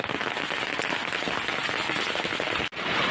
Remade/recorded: recorded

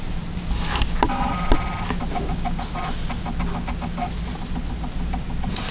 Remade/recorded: recorded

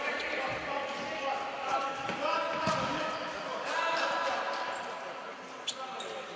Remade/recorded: recorded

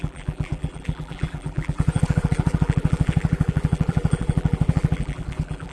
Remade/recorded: remade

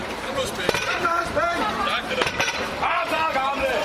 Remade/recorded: remade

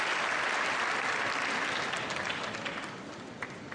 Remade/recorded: recorded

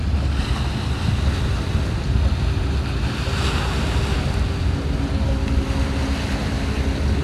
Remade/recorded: recorded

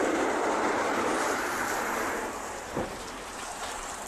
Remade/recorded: remade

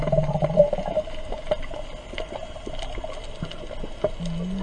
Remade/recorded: recorded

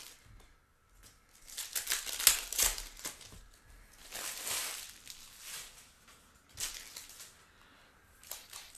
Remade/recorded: recorded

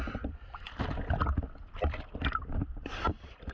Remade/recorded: remade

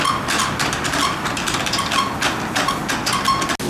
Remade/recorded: recorded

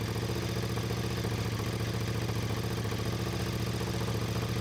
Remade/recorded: remade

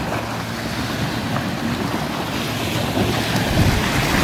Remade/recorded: recorded